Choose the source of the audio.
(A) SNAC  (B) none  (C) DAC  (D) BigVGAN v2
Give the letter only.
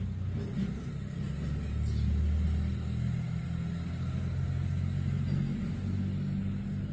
B